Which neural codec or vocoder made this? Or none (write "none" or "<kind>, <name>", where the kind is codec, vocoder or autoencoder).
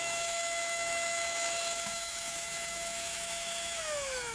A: autoencoder, DAC-VAE